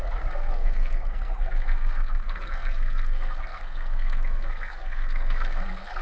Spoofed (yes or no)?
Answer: yes